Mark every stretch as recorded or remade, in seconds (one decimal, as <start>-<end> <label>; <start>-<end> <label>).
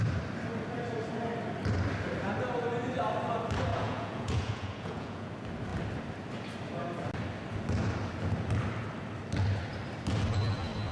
0.0-3.7 recorded; 3.7-5.3 remade; 5.3-10.9 recorded